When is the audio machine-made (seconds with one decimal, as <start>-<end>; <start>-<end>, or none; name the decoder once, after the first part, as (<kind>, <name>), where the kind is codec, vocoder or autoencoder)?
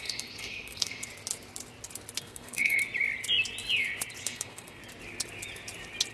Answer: 0.0-1.1 (codec, SNAC); 2.2-2.8; 4.2-4.8